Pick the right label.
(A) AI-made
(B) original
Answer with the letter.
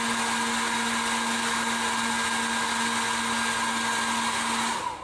B